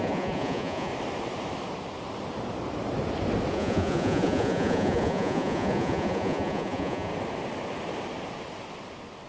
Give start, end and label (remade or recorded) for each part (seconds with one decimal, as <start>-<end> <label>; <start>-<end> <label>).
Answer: 0.0-0.9 remade; 0.9-3.5 recorded; 3.5-7.1 remade; 7.1-9.3 recorded